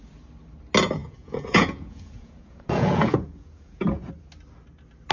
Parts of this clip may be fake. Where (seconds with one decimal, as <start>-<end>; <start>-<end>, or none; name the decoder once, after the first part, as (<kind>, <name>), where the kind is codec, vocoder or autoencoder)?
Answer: 1.0-4.1 (vocoder, Vocos)